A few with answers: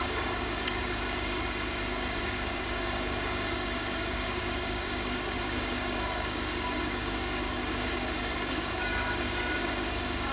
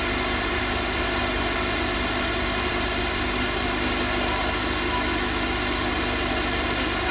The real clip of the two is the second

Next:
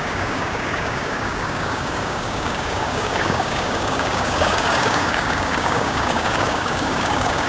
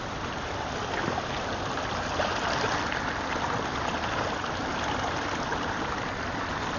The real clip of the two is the second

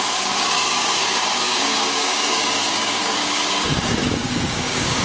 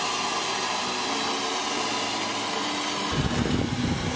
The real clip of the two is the second